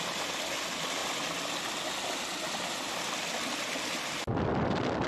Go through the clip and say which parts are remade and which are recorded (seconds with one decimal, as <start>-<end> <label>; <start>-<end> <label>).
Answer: 0.0-5.1 recorded